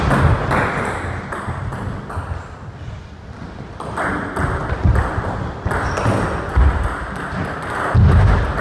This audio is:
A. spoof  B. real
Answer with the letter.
B